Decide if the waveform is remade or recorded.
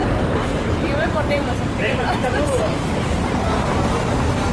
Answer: remade